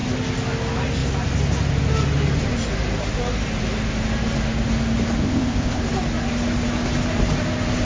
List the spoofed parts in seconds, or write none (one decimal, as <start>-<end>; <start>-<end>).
5.2-5.8

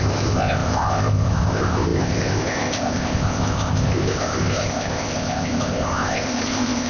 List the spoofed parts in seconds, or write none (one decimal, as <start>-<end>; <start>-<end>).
0.0-6.9

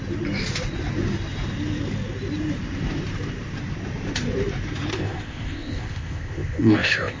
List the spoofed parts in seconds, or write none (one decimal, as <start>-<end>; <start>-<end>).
4.9-7.2

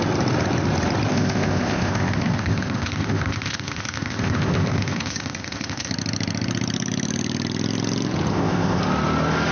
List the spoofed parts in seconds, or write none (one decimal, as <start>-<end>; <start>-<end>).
1.1-5.9; 8.3-8.8